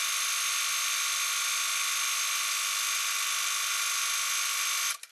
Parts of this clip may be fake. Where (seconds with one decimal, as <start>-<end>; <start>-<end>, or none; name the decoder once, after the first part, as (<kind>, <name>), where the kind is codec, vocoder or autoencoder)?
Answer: none